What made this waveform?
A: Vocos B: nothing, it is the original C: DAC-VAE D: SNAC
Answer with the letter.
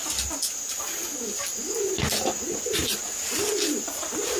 B